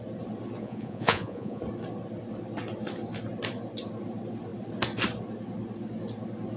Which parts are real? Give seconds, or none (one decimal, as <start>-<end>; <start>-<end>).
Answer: 0.0-0.6; 1.6-6.6